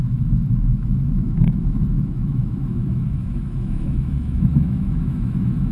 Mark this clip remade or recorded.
remade